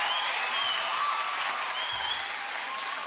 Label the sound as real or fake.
real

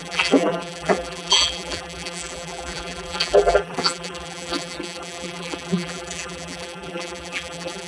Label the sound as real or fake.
fake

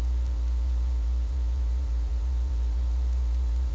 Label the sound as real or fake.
fake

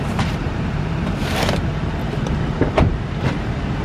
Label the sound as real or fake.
fake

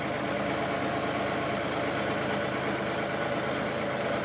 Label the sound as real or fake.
real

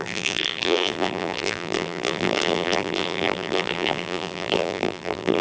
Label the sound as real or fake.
fake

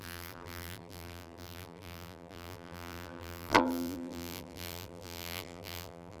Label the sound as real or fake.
fake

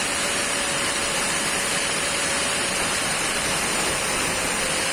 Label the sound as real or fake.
fake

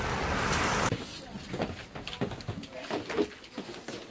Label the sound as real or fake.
real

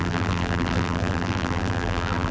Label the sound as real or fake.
fake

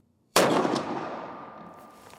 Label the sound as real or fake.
fake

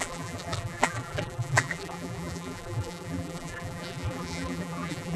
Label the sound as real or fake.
fake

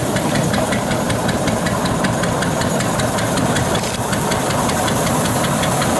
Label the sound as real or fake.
fake